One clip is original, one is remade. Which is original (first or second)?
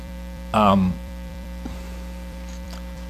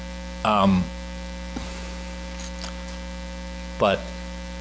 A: second